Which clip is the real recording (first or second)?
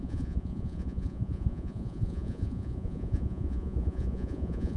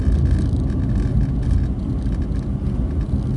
second